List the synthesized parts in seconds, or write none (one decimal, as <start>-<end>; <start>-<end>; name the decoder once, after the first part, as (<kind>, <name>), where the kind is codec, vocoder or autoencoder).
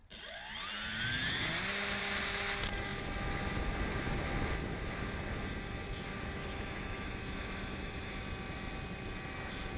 6.4-8.2 (autoencoder, DAC-VAE)